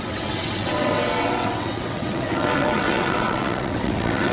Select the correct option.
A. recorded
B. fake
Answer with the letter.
B